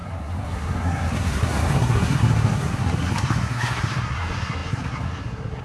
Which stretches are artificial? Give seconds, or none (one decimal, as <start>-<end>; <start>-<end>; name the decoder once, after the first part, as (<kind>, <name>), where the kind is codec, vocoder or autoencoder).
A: 0.0-5.6 (codec, SNAC)